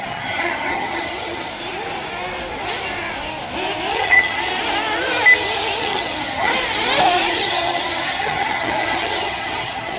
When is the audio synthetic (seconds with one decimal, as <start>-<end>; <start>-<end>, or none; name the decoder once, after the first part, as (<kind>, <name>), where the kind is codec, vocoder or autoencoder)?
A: 0.0-1.5 (vocoder, HiFi-GAN); 3.9-4.5; 5.8-6.5; 7.3-10.0